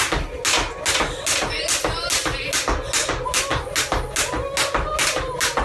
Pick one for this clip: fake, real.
real